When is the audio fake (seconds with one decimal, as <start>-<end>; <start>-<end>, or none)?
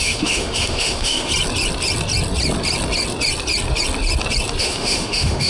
0.0-1.3; 4.6-5.5